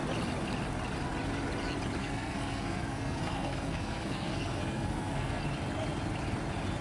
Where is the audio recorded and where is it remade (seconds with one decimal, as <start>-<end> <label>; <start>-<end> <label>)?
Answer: 0.0-2.0 recorded; 2.0-5.4 remade; 5.4-6.8 recorded